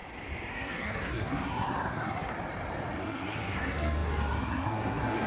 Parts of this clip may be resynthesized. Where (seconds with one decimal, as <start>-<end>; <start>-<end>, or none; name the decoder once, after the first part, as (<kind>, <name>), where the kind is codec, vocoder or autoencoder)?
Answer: 0.5-2.3 (codec, SNAC); 3.0-5.3